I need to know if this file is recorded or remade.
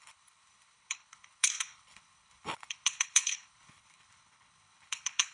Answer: remade